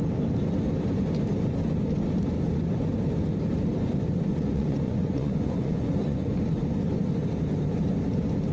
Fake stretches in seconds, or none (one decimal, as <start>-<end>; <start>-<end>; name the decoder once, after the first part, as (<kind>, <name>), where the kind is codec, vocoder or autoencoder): 4.3-6.4 (vocoder, Vocos)